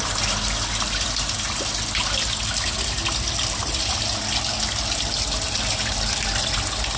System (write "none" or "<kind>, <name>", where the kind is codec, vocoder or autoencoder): none